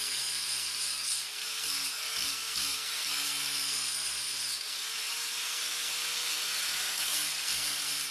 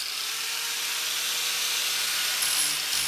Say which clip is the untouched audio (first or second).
second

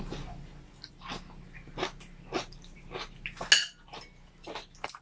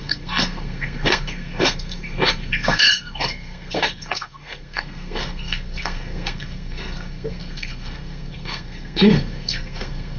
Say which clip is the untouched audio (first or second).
first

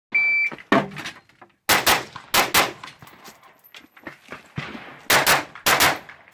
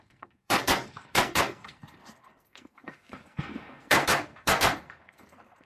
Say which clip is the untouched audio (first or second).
first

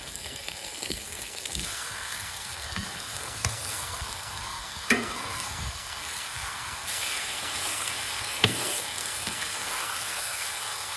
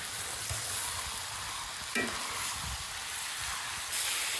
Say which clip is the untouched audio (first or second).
second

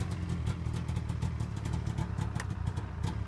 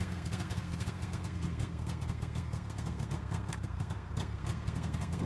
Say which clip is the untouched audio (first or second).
first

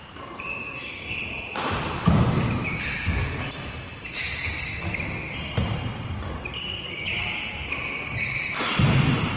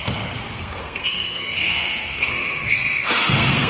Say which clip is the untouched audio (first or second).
first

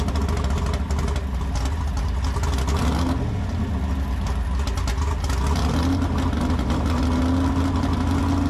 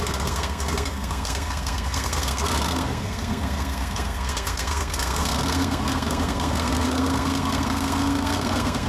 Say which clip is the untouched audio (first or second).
first